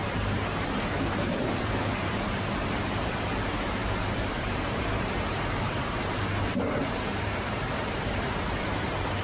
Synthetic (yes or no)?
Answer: yes